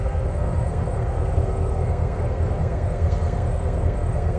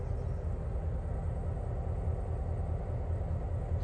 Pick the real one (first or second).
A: second